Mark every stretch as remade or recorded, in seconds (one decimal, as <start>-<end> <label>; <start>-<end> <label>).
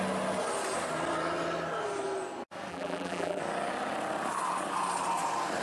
0.0-2.7 recorded; 2.7-3.4 remade; 3.4-5.6 recorded